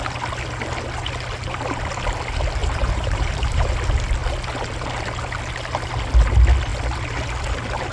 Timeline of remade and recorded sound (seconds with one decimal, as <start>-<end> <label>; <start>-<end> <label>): 0.0-2.6 recorded; 2.6-3.7 remade; 3.7-7.9 recorded